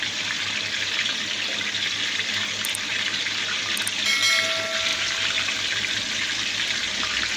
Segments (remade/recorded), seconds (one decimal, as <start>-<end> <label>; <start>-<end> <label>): 0.0-2.9 recorded; 2.9-4.1 remade; 4.1-4.9 recorded; 4.9-7.0 remade; 7.0-7.4 recorded